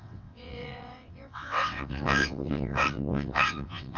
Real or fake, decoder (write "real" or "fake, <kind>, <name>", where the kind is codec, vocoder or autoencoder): fake, vocoder, WaveNeXt